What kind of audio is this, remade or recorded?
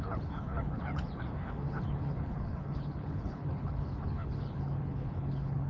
remade